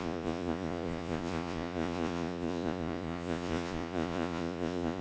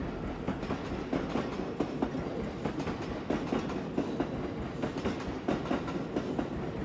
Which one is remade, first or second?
first